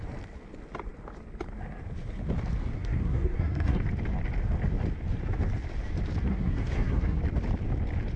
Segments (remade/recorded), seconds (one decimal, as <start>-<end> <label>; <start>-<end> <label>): 0.0-2.6 recorded; 2.6-3.8 remade; 3.8-6.3 recorded; 6.3-7.2 remade; 7.2-8.2 recorded